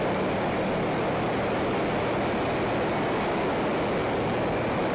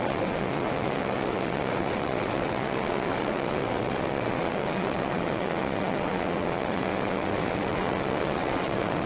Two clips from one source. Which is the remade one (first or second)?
second